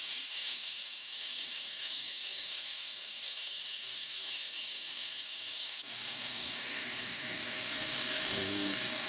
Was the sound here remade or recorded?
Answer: remade